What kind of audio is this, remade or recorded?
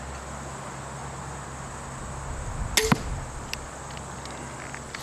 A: recorded